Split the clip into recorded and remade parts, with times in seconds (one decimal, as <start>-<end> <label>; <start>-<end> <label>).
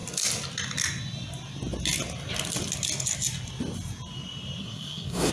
0.0-4.6 recorded; 4.6-5.3 remade